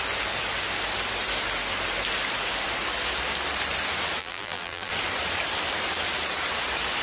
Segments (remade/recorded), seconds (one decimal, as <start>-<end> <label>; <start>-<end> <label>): 0.0-4.2 recorded; 4.2-4.9 remade; 4.9-7.0 recorded